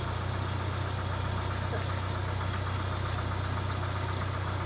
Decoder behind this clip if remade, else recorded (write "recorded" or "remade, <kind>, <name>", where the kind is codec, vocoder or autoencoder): recorded